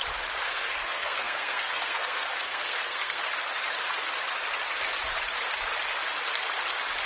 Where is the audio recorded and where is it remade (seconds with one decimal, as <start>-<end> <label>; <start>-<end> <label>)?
0.0-0.4 recorded; 0.4-3.2 remade; 3.2-7.1 recorded